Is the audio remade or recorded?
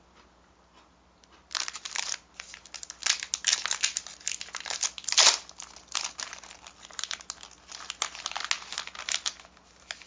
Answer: recorded